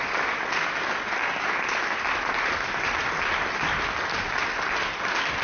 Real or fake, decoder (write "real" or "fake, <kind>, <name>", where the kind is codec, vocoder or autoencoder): real